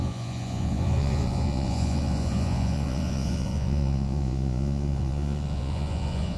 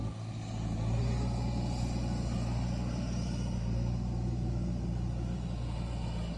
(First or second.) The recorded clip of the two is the second